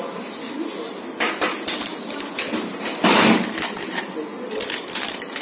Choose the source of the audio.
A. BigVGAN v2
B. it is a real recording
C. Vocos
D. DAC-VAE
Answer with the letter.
B